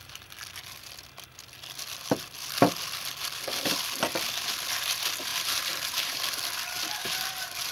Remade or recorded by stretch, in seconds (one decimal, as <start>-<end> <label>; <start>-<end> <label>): 0.0-5.3 recorded; 5.3-6.2 remade; 6.2-7.0 recorded; 7.0-7.7 remade